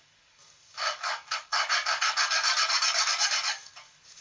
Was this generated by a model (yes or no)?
yes